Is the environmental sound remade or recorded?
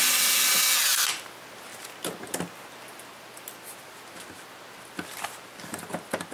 recorded